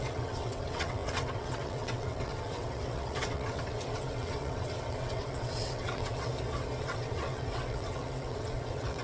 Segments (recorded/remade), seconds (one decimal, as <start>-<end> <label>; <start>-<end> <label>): 0.0-6.3 remade; 6.3-6.8 recorded; 6.8-9.0 remade